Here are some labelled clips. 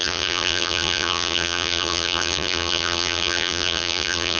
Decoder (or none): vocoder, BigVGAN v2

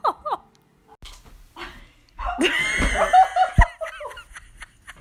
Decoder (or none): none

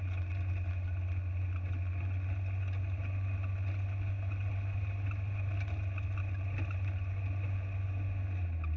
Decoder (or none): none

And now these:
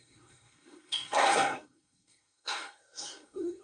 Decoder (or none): codec, SNAC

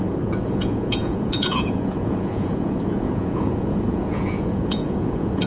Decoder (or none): vocoder, Vocos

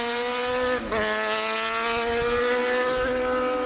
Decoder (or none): none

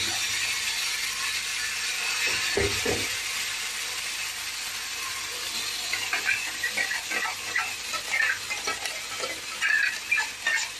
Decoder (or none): none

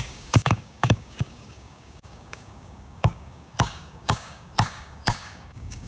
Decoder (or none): codec, DAC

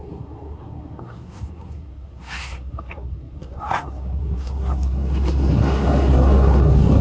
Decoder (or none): codec, SNAC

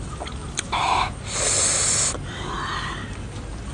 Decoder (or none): none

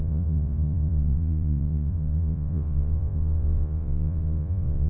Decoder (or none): vocoder, Vocos